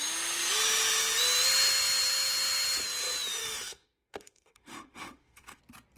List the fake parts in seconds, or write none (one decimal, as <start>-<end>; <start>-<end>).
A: 3.4-5.6